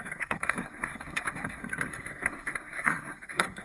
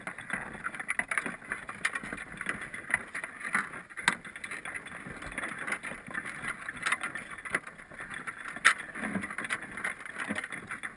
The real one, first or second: second